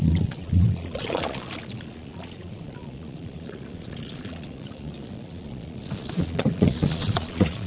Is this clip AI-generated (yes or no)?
yes